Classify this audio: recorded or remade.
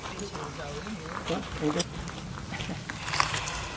recorded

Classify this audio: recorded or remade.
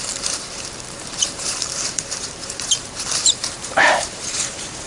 remade